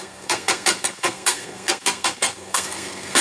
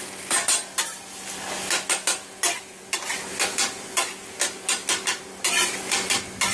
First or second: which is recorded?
second